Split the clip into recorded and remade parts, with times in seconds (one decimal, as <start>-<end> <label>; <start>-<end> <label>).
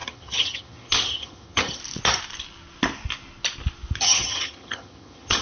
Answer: 0.0-1.8 remade; 1.8-4.0 recorded; 4.0-5.4 remade